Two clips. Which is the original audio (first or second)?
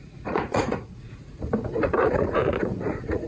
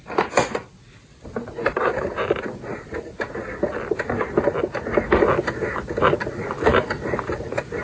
second